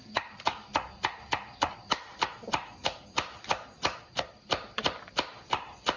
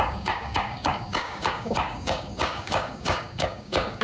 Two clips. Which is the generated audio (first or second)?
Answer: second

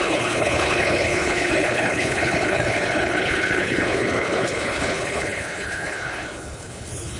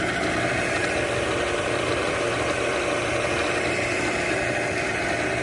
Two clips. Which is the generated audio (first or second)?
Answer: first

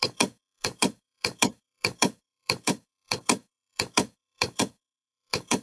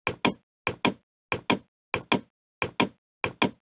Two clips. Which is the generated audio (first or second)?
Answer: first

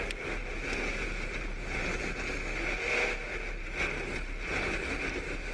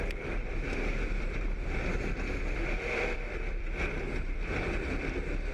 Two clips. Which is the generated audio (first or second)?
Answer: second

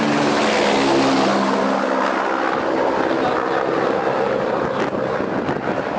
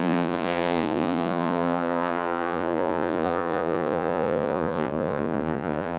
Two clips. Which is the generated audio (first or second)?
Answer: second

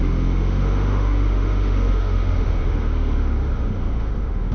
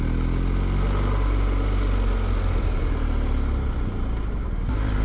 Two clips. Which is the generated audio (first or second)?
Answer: first